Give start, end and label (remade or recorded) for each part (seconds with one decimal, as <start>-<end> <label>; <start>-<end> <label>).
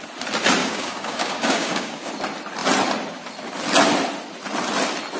0.0-0.6 recorded; 0.6-2.1 remade; 2.1-5.2 recorded